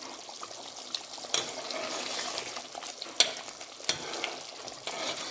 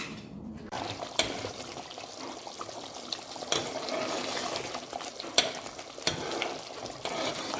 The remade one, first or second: second